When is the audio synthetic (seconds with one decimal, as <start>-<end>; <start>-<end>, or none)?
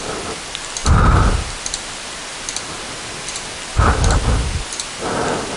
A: none